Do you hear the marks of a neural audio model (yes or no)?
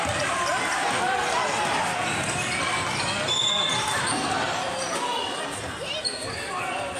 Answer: no